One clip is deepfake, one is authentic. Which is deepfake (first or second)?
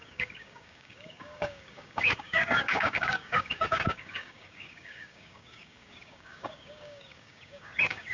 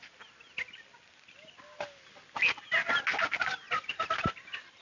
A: first